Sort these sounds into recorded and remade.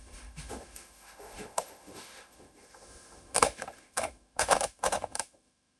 remade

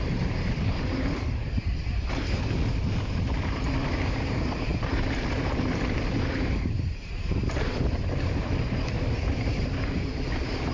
remade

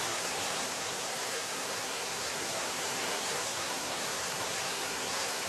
remade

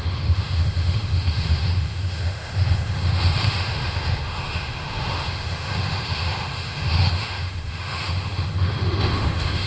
remade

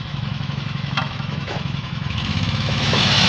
remade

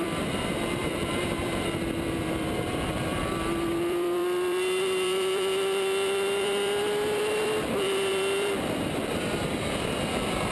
remade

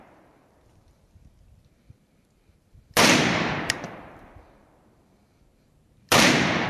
remade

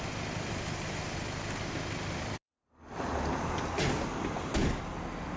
recorded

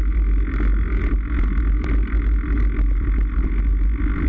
recorded